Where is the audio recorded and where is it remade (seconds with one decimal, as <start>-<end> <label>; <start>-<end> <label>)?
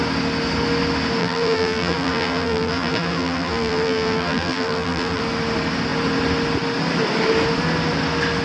0.0-1.2 recorded; 1.2-5.2 remade; 5.2-8.4 recorded